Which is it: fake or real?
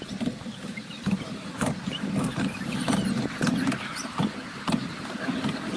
real